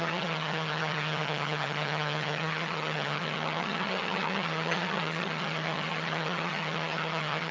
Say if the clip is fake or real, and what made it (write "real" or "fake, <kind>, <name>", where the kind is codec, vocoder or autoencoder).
fake, vocoder, HiFi-GAN